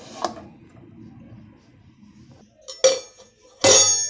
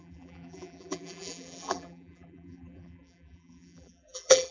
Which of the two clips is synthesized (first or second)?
second